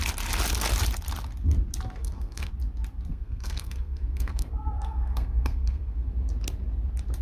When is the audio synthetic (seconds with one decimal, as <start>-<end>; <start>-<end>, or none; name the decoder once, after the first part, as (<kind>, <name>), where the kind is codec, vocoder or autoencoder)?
2.0-2.5 (codec, SNAC); 3.1-6.1